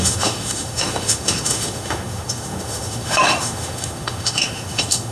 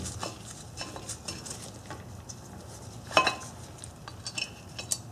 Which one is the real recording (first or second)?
second